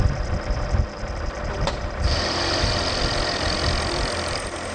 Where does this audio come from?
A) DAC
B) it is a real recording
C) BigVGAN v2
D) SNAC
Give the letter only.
C